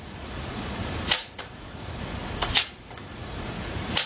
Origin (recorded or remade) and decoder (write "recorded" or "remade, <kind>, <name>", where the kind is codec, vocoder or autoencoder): remade, vocoder, Vocos